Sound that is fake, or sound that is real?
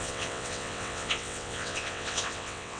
fake